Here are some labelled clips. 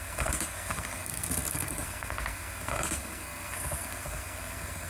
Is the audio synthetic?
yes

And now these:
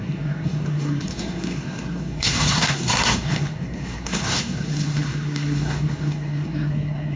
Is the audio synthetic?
yes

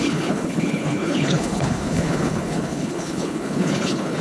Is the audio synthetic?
yes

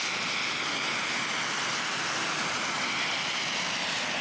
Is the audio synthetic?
no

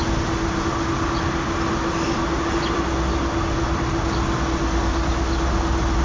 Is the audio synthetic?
no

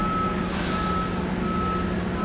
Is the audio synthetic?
no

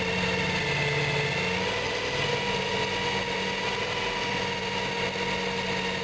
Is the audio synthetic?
no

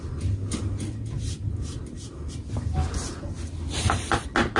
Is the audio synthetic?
no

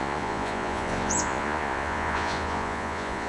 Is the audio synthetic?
yes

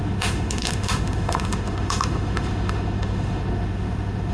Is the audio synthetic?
yes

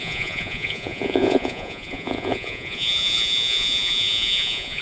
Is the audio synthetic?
yes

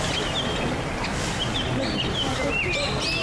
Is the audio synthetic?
no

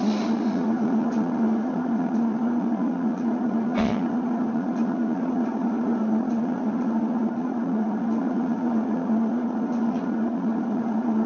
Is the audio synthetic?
yes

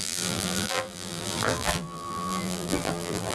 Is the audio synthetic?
yes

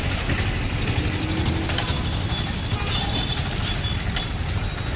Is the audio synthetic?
no